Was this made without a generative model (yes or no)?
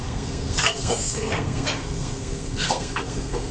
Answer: no